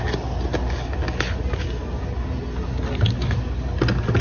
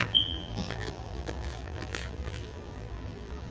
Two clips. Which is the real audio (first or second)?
first